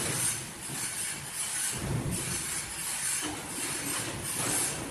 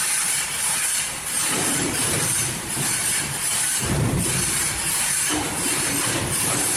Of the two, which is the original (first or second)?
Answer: first